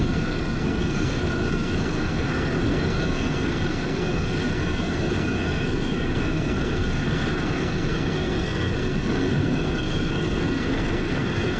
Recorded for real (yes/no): no